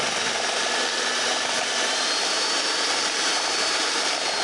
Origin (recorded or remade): remade